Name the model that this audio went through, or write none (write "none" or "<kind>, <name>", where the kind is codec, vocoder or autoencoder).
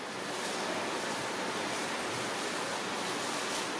none